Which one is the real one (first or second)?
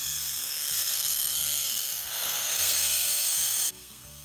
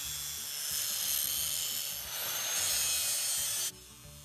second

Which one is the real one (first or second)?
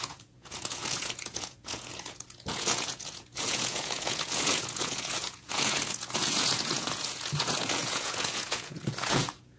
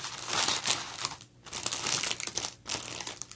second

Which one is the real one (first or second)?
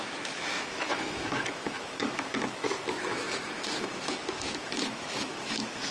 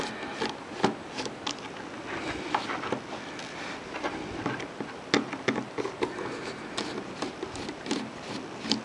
second